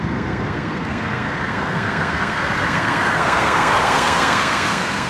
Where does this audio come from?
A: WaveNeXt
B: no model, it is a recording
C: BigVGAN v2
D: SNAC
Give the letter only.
D